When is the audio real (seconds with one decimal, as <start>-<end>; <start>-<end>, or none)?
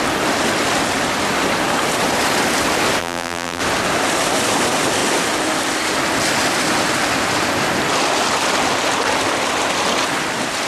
0.0-3.0; 3.6-10.7